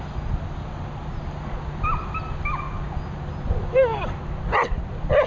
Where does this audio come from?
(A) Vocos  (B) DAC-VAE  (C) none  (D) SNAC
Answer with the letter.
C